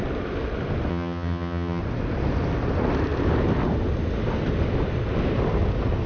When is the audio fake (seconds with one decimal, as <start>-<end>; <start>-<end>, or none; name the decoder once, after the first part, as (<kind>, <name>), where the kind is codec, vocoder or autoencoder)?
0.9-1.8 (vocoder, HiFi-GAN)